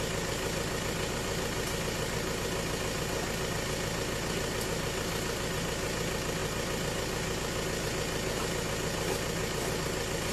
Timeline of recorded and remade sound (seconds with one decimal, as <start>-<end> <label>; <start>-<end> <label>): 0.0-10.3 recorded